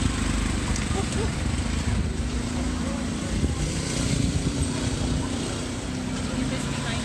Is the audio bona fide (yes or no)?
no